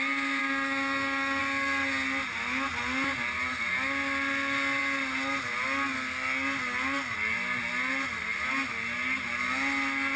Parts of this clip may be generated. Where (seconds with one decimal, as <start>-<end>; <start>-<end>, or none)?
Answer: 0.4-1.4